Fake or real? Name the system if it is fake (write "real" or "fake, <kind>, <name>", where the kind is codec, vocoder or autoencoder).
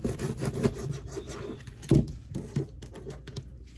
real